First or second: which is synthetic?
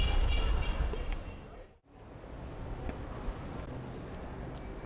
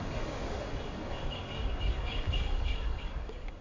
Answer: second